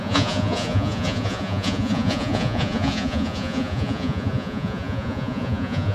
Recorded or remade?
remade